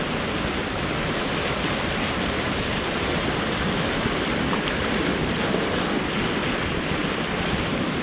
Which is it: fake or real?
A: real